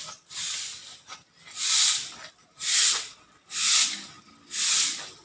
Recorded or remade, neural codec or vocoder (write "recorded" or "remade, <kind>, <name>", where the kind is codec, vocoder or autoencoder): recorded